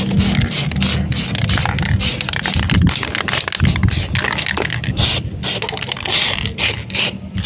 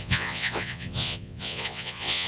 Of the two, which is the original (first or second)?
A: first